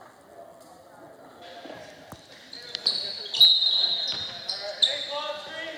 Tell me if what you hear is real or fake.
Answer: real